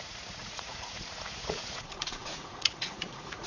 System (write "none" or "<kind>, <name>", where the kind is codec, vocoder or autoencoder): vocoder, Vocos